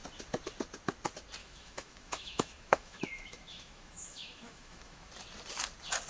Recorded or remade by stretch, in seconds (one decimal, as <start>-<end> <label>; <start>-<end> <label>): 0.0-1.4 recorded; 1.4-5.1 remade; 5.1-6.1 recorded